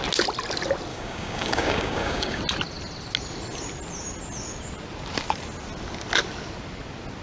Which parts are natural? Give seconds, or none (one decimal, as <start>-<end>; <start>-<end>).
0.0-0.9; 2.4-7.2

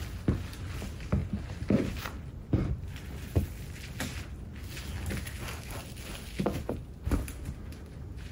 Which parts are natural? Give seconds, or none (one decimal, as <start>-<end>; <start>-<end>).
0.0-1.2; 3.1-8.3

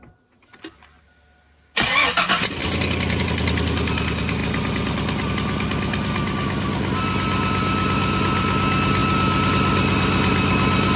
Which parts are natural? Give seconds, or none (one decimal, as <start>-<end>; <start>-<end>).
0.0-11.0

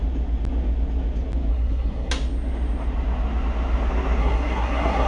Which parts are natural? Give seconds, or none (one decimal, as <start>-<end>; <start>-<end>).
0.0-1.5; 2.1-4.2

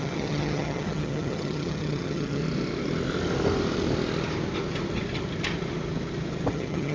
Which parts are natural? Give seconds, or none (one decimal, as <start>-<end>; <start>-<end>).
2.4-6.5